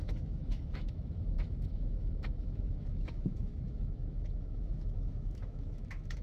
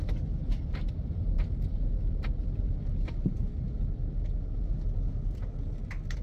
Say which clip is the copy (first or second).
first